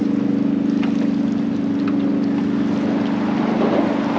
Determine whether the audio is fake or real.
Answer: real